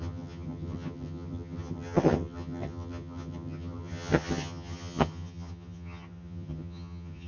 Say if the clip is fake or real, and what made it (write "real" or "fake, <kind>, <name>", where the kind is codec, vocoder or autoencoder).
fake, vocoder, HiFi-GAN